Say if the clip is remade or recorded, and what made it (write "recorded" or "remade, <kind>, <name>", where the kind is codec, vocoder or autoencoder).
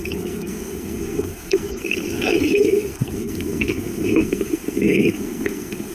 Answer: remade, codec, SNAC